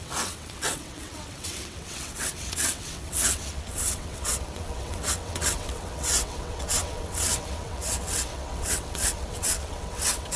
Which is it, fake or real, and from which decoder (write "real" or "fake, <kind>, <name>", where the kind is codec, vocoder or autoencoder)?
fake, vocoder, WaveNeXt